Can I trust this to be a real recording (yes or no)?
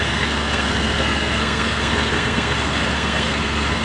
no